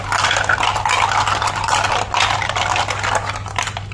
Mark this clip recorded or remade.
recorded